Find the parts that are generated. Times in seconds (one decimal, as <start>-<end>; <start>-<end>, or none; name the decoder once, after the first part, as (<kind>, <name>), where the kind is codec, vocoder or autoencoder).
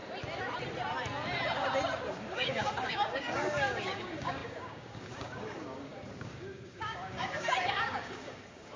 2.1-8.8 (codec, DAC)